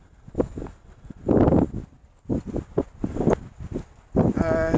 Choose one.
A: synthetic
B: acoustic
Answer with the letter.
B